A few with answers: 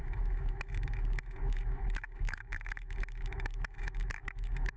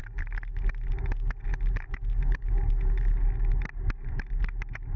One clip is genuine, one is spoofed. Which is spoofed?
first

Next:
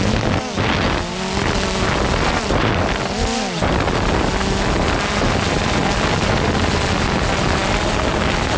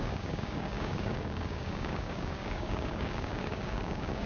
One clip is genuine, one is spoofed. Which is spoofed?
second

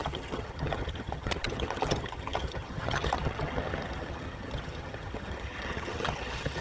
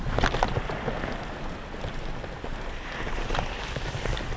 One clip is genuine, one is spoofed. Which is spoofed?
first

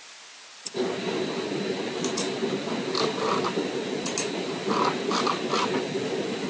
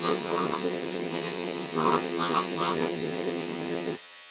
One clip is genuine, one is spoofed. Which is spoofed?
second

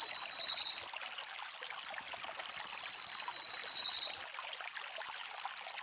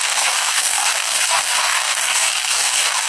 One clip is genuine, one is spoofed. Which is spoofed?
second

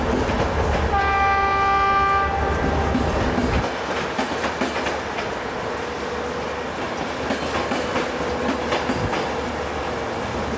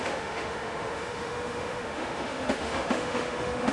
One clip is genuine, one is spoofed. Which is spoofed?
second